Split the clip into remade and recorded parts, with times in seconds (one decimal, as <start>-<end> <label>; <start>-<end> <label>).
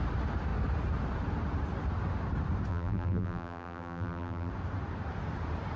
0.0-2.7 recorded; 2.7-4.5 remade; 4.5-5.8 recorded